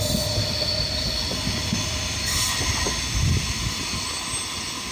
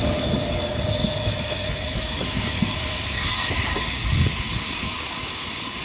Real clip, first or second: first